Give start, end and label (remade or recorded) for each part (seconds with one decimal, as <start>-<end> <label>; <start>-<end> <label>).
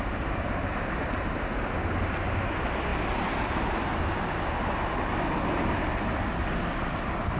0.0-7.4 recorded